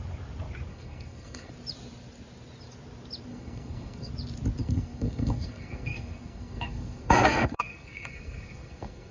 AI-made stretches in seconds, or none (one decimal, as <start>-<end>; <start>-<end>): 0.7-1.5; 3.3-4.1; 4.6-9.1